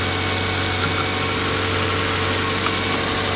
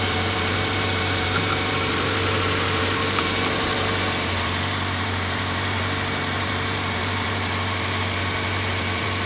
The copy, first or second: second